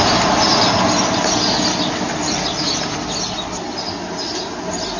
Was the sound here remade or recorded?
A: recorded